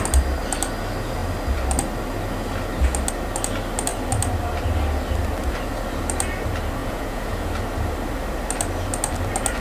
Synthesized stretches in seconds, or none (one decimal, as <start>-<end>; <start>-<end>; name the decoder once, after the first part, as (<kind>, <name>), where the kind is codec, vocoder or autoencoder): 6.8-7.5 (vocoder, Vocos)